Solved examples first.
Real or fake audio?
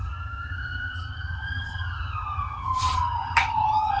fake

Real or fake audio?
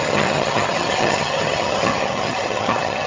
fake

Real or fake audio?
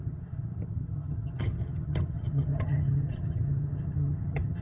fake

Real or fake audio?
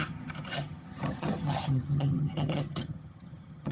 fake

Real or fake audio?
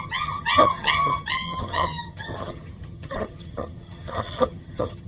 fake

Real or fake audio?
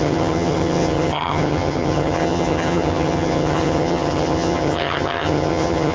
fake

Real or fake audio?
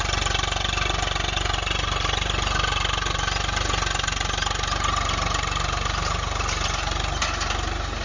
real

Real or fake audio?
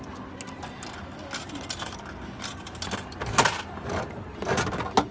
real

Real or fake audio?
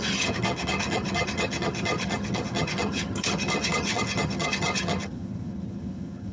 fake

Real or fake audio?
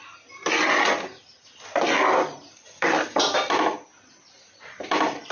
real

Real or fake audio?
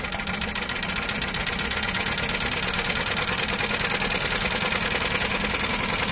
real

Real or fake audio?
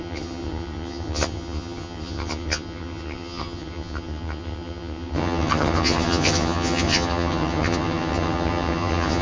fake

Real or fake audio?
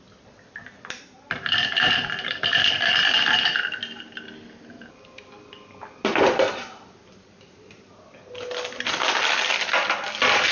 real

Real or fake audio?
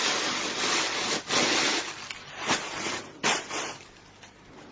real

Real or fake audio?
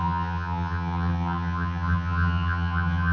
fake